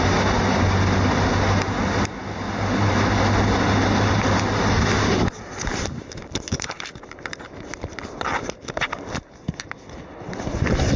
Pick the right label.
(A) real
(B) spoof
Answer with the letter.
A